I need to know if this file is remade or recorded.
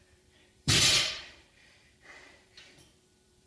remade